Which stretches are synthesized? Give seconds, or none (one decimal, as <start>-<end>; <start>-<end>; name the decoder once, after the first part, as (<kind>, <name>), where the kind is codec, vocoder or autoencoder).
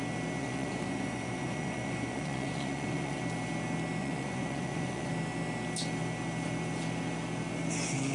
0.4-3.2 (vocoder, Vocos); 4.0-5.1